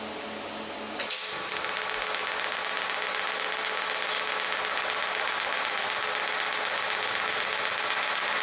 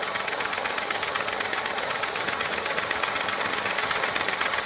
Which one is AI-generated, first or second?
second